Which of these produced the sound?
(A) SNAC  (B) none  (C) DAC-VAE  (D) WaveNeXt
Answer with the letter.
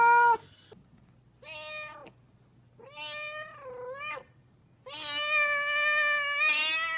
B